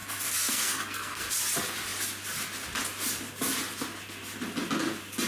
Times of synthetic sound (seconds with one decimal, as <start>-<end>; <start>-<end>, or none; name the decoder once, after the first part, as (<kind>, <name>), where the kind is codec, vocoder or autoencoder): 0.0-1.3 (codec, SNAC)